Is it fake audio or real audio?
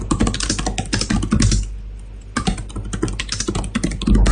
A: real